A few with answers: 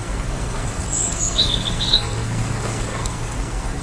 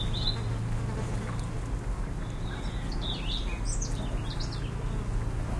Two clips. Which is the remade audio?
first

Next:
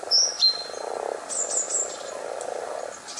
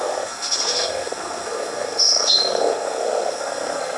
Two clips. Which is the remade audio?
second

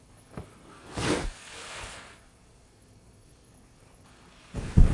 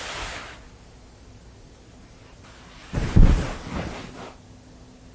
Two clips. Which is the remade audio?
first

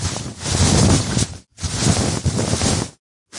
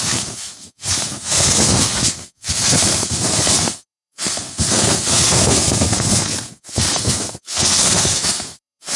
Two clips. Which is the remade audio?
second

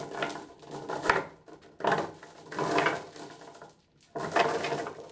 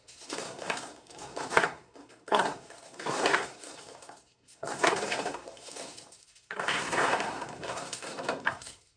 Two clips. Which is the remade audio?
second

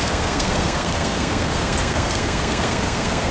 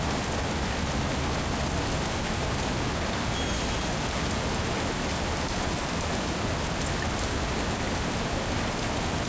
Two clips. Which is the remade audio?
first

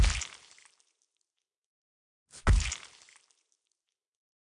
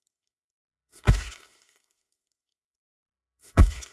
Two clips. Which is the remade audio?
second